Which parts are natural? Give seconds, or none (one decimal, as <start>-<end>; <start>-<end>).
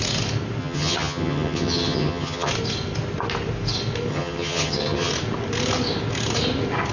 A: 0.0-0.6; 2.5-4.1; 5.1-6.9